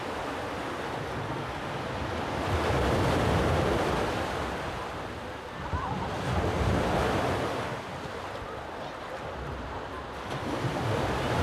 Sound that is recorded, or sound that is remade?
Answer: recorded